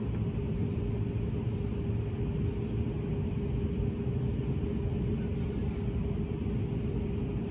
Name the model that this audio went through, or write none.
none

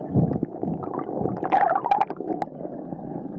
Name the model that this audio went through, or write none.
none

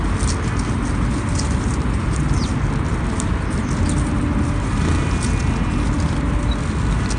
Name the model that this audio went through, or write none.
none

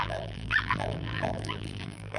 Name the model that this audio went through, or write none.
vocoder, BigVGAN v2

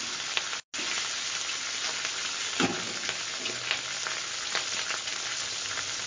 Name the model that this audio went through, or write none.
none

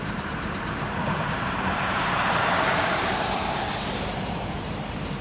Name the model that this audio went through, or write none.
vocoder, BigVGAN v2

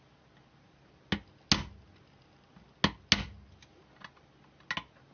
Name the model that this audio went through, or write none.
none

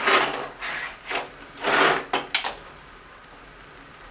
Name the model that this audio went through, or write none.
none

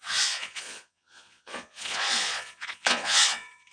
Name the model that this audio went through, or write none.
vocoder, Vocos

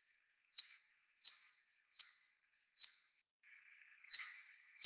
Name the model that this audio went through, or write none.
codec, SNAC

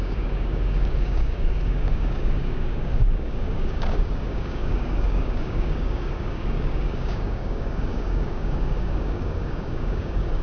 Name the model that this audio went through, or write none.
codec, DAC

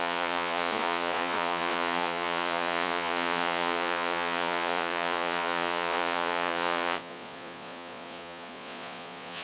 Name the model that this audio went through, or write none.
vocoder, Vocos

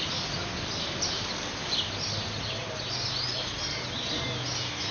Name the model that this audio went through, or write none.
none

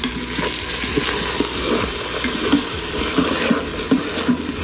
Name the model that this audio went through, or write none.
none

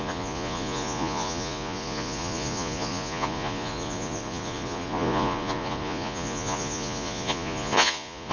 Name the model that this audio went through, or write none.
vocoder, Vocos